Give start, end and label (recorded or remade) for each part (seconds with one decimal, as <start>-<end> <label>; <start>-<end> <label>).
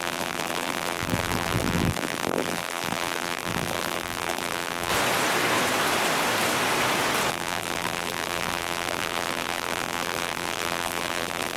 0.0-4.9 remade; 4.9-7.3 recorded; 7.3-11.6 remade